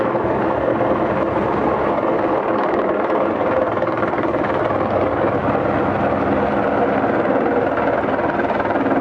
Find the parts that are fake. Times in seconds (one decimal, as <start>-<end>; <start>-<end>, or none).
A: 0.0-0.7; 1.9-5.4